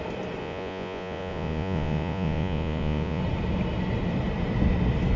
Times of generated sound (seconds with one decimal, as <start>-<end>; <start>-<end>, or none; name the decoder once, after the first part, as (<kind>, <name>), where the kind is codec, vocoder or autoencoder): 0.4-3.2 (vocoder, Vocos)